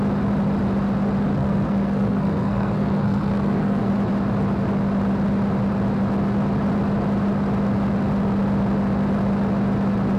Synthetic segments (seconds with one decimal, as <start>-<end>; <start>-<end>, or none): 1.3-3.9